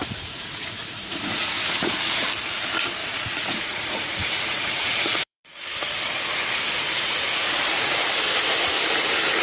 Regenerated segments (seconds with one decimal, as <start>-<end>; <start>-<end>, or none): 0.0-1.9; 3.0-6.0; 6.9-8.0